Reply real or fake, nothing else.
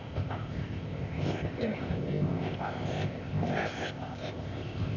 fake